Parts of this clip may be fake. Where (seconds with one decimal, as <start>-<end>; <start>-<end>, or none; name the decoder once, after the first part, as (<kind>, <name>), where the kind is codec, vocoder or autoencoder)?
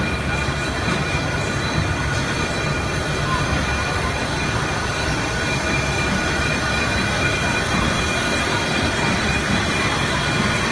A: none